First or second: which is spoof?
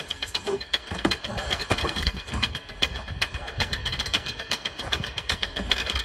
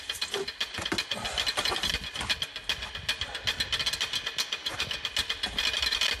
first